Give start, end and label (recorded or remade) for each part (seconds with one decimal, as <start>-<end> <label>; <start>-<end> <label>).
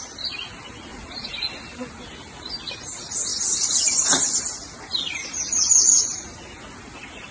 0.0-0.9 recorded; 0.9-1.5 remade; 1.5-7.3 recorded